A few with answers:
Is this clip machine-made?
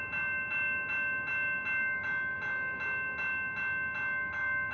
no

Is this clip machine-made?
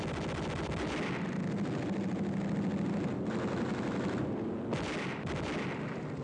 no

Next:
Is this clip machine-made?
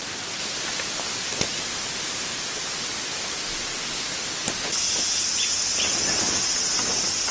no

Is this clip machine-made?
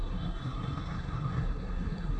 yes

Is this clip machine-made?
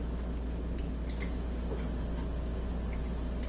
no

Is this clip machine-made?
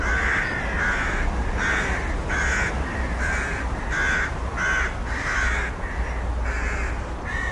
no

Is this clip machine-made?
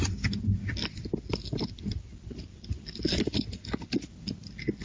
no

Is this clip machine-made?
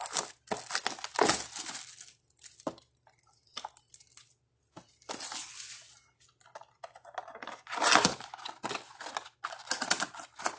no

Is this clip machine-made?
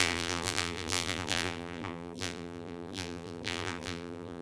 yes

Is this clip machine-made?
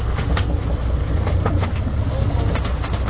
no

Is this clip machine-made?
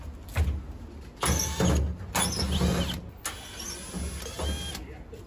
no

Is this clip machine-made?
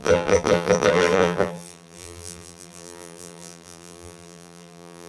yes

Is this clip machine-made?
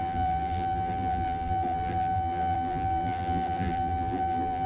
yes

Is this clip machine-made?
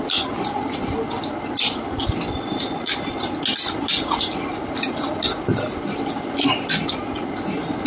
no